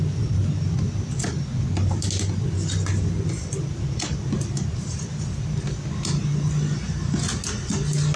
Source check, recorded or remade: recorded